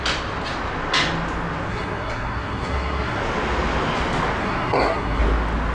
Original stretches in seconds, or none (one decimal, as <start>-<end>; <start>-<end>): 0.0-1.7; 3.2-4.4; 5.2-5.7